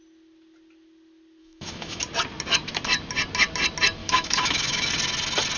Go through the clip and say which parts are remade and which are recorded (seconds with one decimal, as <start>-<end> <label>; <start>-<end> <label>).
0.0-1.4 recorded; 1.4-2.0 remade; 2.0-4.0 recorded; 4.0-4.9 remade; 4.9-5.6 recorded